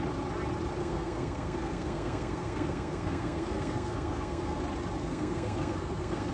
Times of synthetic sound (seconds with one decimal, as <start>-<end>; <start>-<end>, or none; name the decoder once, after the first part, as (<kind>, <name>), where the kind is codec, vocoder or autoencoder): 0.8-4.6 (codec, SNAC); 5.0-6.3